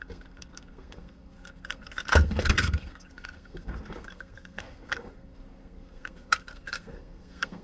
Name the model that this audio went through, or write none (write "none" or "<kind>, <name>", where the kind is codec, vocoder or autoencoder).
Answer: codec, SNAC